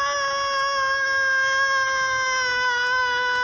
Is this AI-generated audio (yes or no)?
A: no